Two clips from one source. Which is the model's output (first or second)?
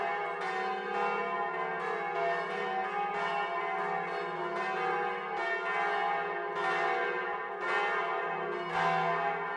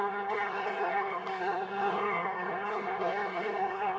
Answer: second